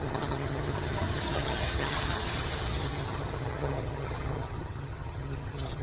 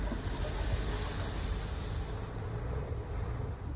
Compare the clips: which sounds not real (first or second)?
first